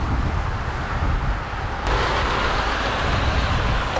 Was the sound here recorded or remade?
recorded